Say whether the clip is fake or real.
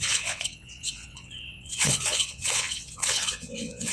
fake